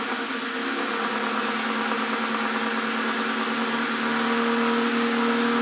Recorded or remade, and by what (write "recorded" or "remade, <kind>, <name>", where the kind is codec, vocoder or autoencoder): recorded